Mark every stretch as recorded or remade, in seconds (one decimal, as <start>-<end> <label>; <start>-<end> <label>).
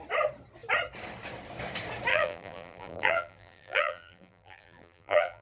0.0-2.1 recorded; 2.1-5.4 remade